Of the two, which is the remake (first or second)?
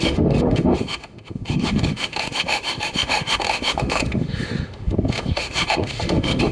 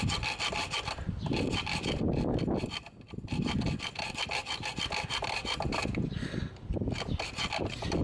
first